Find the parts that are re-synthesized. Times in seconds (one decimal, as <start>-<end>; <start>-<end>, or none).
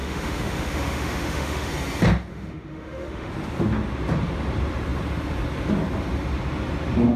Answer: 0.0-1.7; 2.3-3.3